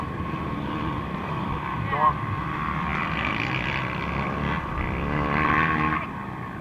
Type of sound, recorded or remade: recorded